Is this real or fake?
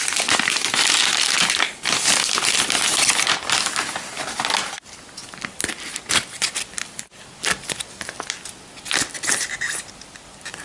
real